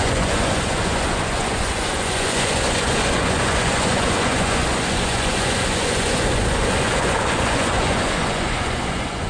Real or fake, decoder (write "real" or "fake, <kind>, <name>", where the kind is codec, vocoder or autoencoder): fake, vocoder, Vocos